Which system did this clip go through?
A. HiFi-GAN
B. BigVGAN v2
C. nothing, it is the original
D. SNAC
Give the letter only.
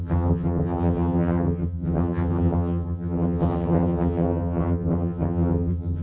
A